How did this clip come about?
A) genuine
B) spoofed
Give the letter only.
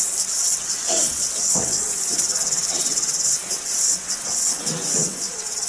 B